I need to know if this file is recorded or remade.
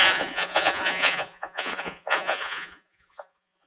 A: remade